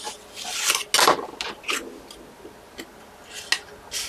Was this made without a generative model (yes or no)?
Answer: yes